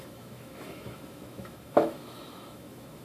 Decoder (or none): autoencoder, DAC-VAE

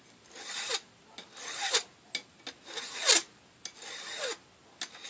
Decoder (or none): none